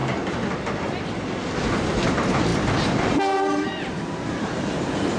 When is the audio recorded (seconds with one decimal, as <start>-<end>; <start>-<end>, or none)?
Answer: 0.0-2.1